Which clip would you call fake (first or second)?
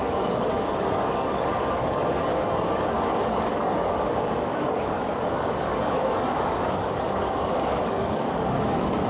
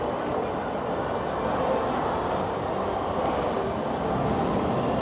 first